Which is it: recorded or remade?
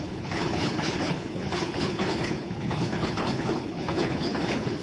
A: remade